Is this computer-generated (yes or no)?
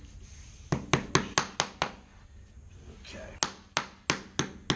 no